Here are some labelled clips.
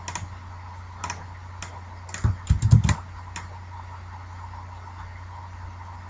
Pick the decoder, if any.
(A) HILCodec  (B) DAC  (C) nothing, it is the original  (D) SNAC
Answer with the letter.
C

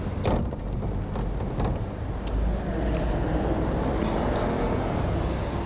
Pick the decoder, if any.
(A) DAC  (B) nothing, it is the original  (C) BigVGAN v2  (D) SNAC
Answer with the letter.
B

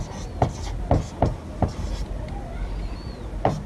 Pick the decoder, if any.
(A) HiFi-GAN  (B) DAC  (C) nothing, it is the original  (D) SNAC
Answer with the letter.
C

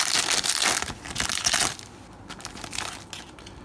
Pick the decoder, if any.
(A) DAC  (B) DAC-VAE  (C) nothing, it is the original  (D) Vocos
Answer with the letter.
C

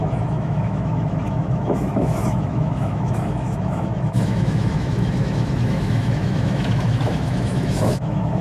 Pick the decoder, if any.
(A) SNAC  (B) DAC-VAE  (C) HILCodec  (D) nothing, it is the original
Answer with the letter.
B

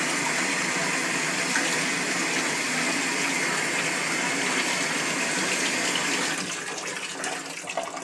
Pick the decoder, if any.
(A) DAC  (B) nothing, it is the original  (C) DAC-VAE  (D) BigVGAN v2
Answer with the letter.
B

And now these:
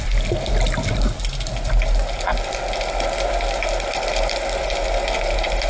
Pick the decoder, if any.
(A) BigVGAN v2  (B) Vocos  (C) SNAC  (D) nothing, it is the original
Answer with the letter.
D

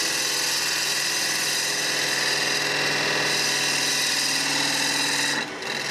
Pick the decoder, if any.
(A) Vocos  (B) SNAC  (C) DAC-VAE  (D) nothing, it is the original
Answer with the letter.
D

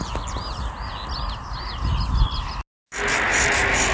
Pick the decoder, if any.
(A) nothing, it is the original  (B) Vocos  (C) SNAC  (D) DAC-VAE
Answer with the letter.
A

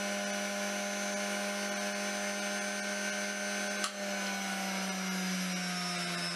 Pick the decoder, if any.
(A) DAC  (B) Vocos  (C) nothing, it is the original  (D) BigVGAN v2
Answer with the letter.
C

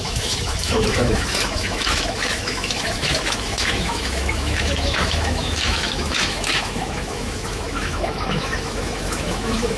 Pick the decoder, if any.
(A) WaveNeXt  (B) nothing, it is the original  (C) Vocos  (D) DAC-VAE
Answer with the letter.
D